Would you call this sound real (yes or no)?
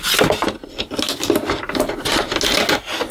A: yes